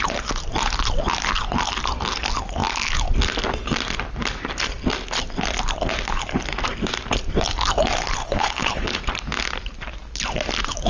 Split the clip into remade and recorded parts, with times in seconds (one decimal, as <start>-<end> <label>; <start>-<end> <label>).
0.0-8.2 recorded; 8.2-9.0 remade; 9.0-10.9 recorded